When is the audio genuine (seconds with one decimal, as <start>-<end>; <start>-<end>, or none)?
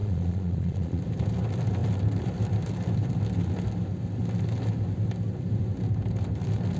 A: 1.0-6.8